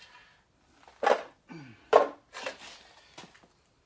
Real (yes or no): yes